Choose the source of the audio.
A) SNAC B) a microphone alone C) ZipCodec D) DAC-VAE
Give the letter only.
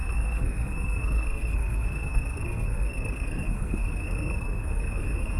A